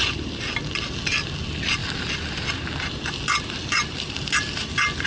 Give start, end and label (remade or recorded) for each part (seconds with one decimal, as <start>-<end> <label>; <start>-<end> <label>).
0.0-5.1 recorded